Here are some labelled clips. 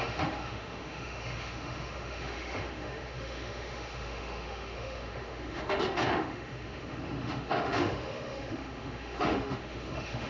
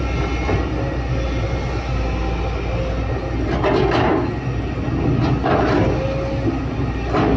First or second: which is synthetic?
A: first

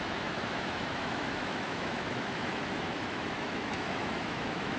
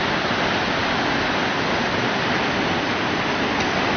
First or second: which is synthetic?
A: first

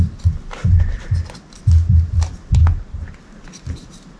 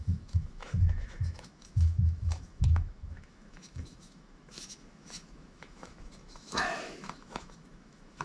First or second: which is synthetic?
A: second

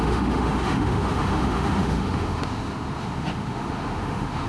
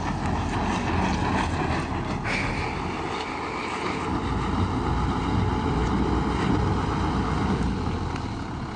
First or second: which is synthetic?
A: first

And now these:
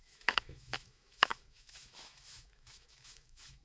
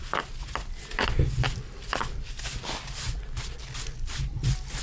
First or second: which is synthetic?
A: first